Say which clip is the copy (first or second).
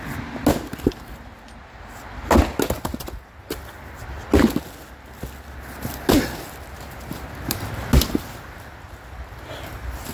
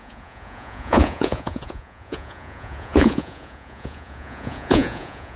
second